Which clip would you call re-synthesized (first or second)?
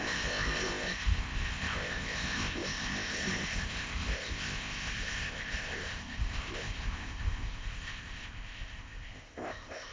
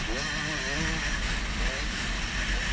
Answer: first